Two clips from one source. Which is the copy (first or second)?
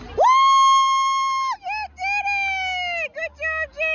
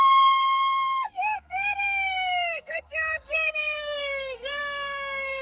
second